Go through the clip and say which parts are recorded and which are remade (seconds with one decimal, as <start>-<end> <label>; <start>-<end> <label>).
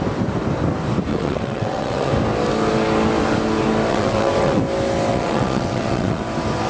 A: 0.0-1.1 recorded; 1.1-2.1 remade; 2.1-3.9 recorded; 3.9-4.6 remade; 4.6-5.1 recorded; 5.1-6.2 remade; 6.2-6.7 recorded